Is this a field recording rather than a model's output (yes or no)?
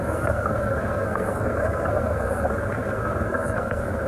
no